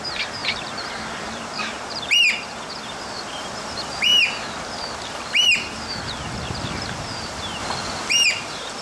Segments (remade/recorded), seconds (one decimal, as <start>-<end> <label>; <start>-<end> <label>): 0.0-4.1 remade; 4.1-5.1 recorded; 5.1-7.6 remade; 7.6-8.1 recorded; 8.1-8.8 remade